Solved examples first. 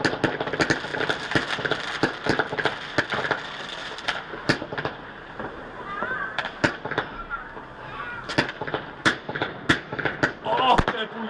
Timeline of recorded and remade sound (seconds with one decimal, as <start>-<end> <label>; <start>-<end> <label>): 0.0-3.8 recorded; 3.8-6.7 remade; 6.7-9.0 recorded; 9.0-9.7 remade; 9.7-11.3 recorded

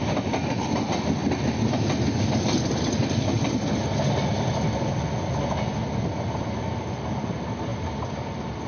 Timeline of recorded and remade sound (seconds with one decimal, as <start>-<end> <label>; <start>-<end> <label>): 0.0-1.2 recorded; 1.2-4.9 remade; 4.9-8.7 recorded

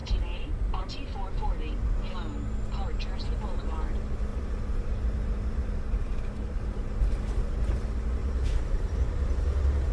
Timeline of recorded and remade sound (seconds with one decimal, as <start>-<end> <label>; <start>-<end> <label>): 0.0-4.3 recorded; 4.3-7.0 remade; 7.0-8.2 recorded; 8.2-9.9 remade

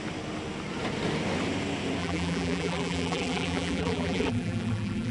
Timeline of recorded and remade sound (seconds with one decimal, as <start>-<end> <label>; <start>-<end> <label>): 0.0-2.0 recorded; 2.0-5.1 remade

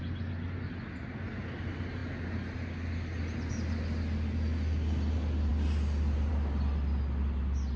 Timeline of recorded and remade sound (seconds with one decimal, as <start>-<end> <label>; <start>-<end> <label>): 0.0-7.8 recorded